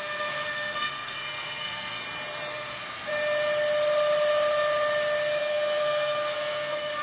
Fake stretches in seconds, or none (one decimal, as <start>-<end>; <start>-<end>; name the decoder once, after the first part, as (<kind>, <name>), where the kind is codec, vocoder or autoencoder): 0.0-2.0 (codec, SNAC); 2.5-3.1; 5.4-7.0